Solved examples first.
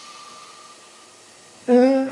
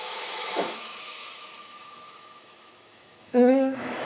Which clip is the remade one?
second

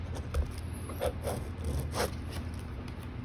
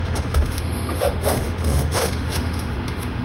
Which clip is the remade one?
second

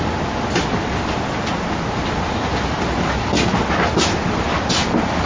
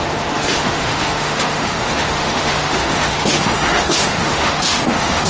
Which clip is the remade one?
second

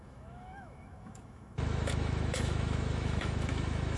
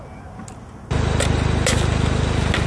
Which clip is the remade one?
first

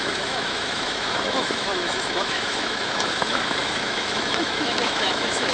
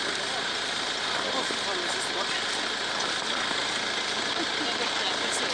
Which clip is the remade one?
first